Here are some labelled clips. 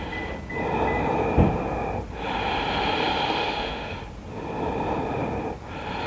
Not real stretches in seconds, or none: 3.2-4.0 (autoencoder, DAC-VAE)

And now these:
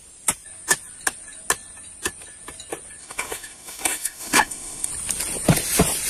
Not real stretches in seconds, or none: 3.0-4.9 (autoencoder, DAC-VAE)

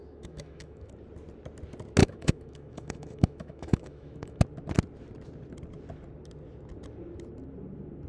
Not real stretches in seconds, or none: 0.0-0.9 (autoencoder, DAC-VAE); 2.0-4.4

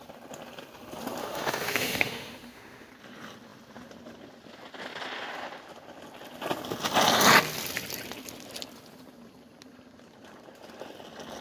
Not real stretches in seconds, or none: 1.2-2.9 (autoencoder, DAC-VAE)